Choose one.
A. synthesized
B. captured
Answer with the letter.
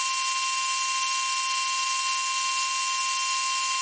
B